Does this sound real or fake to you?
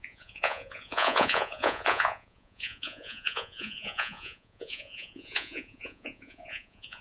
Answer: fake